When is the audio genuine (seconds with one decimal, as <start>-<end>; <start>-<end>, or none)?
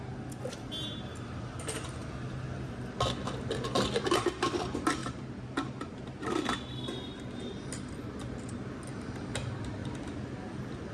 0.0-10.9